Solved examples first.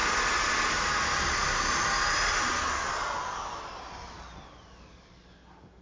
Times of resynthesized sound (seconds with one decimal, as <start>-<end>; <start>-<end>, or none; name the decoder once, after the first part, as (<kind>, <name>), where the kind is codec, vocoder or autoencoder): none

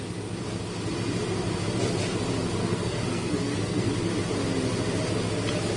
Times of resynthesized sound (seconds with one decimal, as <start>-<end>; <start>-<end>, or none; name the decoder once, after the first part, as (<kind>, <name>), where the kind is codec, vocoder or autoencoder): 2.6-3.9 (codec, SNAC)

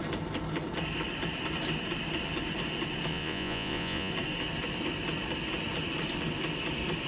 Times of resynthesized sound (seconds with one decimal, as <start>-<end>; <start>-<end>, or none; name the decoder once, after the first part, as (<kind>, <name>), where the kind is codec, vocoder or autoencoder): 3.1-4.1 (vocoder, Vocos)

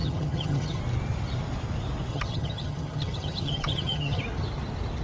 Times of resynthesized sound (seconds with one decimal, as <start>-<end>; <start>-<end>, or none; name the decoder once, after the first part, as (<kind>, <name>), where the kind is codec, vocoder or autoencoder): 0.0-0.8 (vocoder, HiFi-GAN); 2.1-4.2

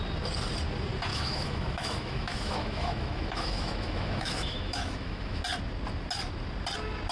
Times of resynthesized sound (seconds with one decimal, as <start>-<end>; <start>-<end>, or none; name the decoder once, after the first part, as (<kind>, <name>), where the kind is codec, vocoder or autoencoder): 1.1-5.4 (autoencoder, DAC-VAE)

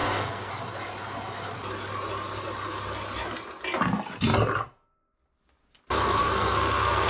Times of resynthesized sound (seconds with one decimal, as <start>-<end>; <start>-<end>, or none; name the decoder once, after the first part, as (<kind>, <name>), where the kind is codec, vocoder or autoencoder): 0.0-0.5 (codec, SNAC); 6.2-7.1